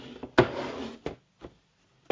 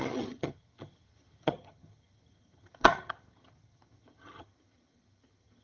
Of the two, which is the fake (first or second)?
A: second